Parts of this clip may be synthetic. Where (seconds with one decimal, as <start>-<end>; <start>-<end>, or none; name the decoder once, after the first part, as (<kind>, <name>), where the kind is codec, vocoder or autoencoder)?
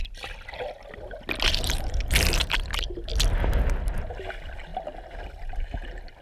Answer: none